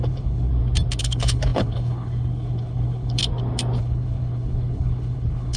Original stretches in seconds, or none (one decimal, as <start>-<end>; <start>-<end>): 0.5-1.0; 3.2-3.8